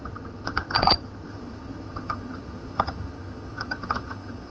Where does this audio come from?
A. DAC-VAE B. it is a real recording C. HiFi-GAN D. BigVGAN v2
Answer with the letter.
C